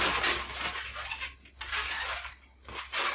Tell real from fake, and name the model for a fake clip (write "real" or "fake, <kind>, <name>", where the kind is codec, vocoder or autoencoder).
real